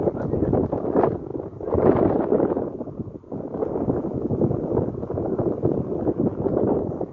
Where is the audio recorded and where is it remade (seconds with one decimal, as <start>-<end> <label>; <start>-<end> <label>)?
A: 0.0-1.3 recorded; 1.3-2.5 remade; 2.5-7.1 recorded